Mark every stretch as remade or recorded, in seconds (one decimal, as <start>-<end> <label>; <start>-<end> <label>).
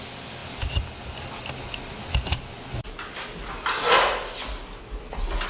0.0-5.5 recorded